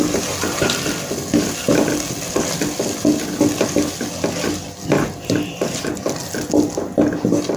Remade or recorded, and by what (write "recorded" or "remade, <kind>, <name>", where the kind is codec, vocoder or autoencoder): recorded